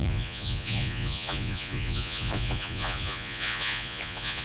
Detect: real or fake fake